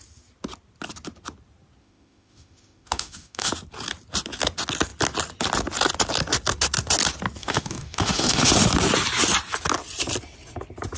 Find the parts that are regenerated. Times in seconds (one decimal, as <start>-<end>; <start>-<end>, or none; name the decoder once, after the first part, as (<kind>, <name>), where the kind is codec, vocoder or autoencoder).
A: 1.8-3.5 (autoencoder, DAC-VAE); 7.4-8.5